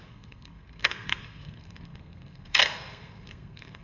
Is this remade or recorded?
remade